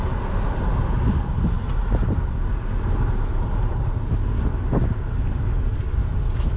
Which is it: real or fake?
real